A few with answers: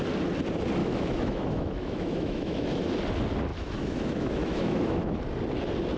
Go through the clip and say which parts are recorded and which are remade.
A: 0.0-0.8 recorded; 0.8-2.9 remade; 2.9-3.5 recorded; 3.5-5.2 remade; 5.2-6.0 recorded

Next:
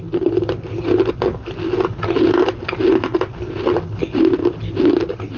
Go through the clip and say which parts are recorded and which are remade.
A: 0.0-5.4 recorded

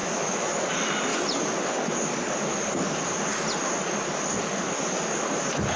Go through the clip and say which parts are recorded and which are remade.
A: 0.0-0.7 remade; 0.7-5.8 recorded